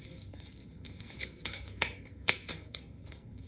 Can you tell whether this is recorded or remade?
remade